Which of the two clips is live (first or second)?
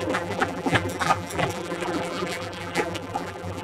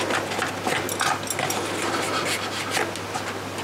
second